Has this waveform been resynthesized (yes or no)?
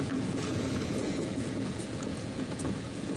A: yes